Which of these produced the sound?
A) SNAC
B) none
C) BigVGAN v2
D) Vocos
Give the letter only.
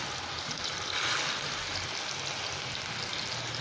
B